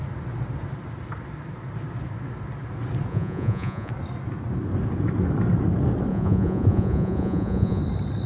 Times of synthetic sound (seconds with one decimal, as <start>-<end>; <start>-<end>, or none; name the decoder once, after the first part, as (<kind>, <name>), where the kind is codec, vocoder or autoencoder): 3.1-3.9 (vocoder, Vocos); 6.1-7.8

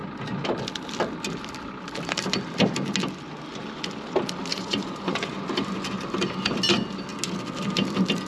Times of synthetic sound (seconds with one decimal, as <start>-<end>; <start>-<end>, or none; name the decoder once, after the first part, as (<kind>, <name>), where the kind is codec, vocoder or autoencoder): 4.5-5.3 (vocoder, Vocos)

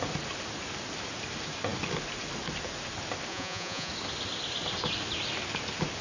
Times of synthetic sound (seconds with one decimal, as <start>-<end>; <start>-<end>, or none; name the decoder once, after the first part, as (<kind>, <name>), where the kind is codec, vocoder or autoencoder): 3.3-3.9 (vocoder, Vocos)

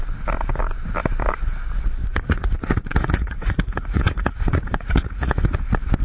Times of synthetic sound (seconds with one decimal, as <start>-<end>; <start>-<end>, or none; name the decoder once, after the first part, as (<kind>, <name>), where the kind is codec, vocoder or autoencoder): 2.0-5.6 (vocoder, Vocos)

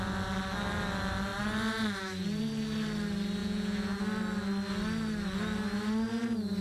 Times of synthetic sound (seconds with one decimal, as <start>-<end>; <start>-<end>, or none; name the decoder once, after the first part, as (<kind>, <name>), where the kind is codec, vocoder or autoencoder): 3.4-4.0 (vocoder, Vocos)

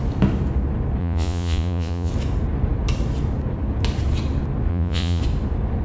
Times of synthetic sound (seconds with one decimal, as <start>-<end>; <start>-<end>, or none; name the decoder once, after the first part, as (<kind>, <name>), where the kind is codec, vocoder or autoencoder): 1.0-2.1 (vocoder, Vocos); 4.7-5.2

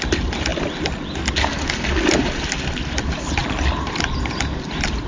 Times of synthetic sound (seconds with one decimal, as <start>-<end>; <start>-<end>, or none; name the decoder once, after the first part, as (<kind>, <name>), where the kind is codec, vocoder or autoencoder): none

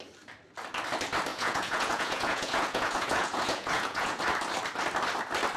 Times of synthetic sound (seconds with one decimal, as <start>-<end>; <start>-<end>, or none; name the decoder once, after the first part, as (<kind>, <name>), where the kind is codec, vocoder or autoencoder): 1.3-4.2 (vocoder, Vocos)